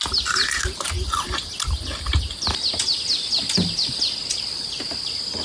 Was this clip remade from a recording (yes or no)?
no